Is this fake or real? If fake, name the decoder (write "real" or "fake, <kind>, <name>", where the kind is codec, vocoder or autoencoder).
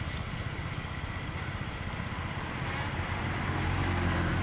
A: real